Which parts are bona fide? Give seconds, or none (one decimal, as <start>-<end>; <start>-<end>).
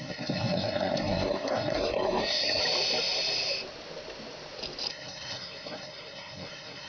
2.6-4.9